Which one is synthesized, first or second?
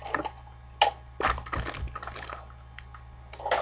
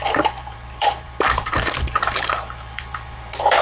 second